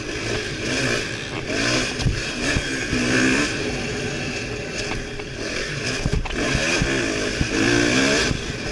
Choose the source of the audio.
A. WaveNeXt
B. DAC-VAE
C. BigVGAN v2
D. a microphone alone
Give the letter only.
D